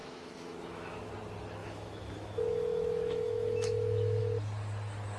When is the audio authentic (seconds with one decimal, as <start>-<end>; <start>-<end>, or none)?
1.1-1.6; 4.2-5.2